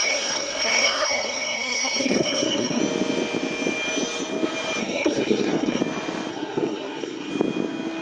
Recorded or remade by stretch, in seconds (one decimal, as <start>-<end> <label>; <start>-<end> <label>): 0.0-2.8 remade; 2.8-4.8 recorded; 4.8-5.8 remade; 5.8-6.3 recorded; 6.3-7.3 remade; 7.3-8.0 recorded